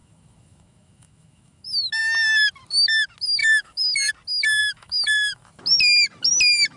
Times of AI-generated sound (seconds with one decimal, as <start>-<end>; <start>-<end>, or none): 0.0-2.0; 3.4-4.1; 4.6-5.6